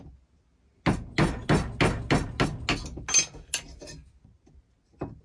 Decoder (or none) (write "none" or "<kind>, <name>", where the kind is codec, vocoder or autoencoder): none